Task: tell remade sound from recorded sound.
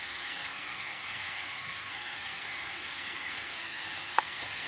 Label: remade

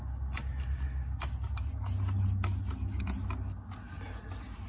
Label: recorded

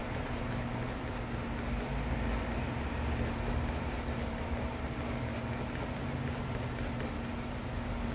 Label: recorded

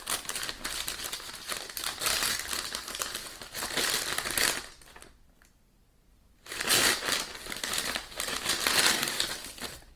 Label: recorded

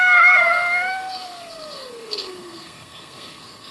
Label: remade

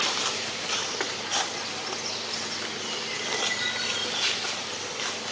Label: recorded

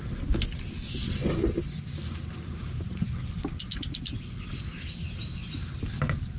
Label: recorded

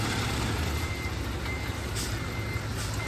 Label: recorded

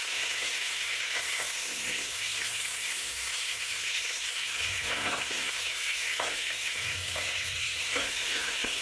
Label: remade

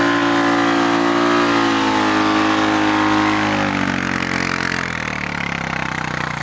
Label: recorded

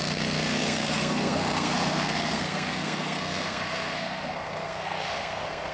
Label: remade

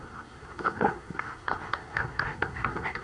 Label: remade